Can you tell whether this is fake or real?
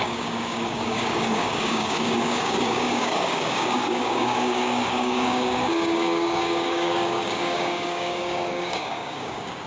fake